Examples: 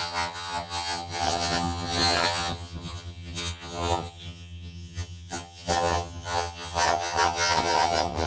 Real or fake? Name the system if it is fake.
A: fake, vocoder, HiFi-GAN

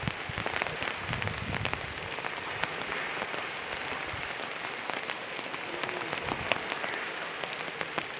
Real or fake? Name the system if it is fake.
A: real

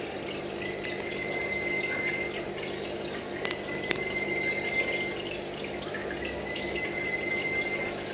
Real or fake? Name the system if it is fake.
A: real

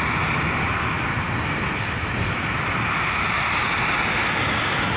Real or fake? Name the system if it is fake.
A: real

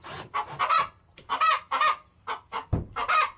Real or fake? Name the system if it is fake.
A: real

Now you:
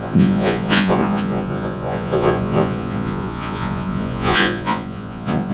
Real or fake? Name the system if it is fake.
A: fake, vocoder, Vocos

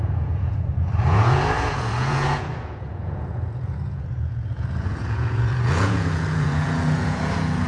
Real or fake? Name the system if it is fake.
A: fake, vocoder, Vocos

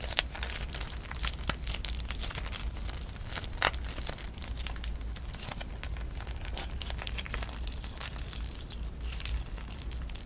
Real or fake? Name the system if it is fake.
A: real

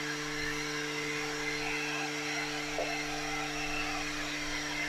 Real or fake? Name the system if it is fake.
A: real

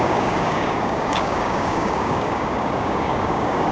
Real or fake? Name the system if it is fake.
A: fake, codec, DAC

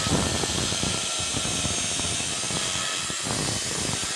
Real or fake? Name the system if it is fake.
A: real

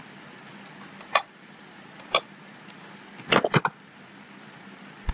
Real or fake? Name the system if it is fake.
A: real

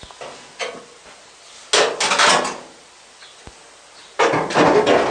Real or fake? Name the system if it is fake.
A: real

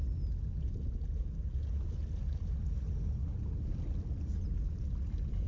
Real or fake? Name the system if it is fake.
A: real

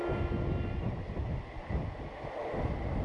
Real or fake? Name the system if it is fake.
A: real